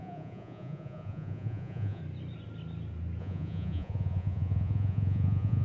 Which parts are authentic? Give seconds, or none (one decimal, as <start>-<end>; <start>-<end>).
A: 2.0-3.2